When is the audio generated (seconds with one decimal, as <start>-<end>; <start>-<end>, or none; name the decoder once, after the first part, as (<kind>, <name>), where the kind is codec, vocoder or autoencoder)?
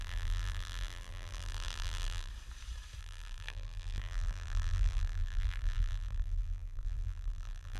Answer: 0.0-2.3 (vocoder, BigVGAN v2); 3.0-7.8